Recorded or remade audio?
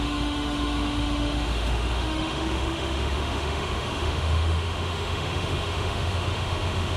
remade